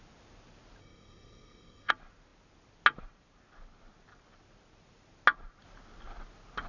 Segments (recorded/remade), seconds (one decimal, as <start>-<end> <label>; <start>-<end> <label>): 0.0-0.8 recorded; 0.8-1.9 remade; 1.9-6.7 recorded